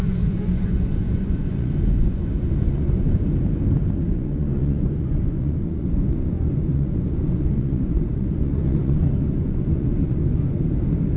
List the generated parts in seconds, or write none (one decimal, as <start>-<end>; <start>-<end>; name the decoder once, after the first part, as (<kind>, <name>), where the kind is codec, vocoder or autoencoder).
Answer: 0.0-3.3 (vocoder, Vocos); 4.1-10.2